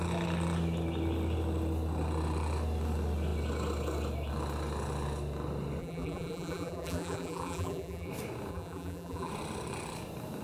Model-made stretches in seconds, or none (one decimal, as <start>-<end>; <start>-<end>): 5.8-8.1; 8.5-9.3